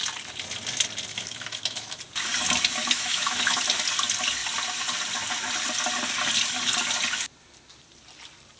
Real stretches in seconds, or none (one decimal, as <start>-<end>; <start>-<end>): 0.0-1.1; 2.0-2.8; 3.6-8.6